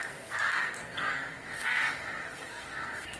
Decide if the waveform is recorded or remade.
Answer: remade